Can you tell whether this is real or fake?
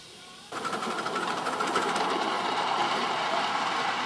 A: fake